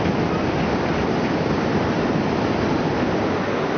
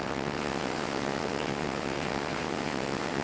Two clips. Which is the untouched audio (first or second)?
first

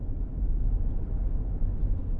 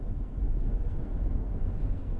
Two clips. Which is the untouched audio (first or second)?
first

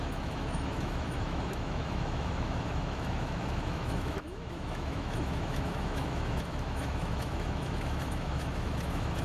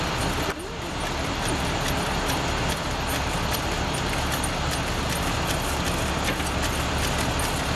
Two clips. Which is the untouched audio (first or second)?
second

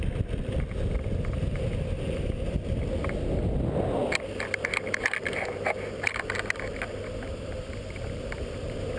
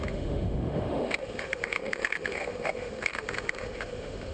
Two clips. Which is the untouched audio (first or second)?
first